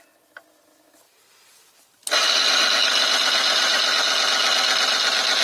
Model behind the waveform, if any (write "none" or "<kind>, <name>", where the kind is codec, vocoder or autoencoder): none